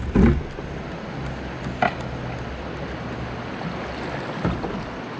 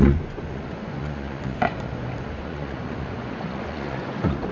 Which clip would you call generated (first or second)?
second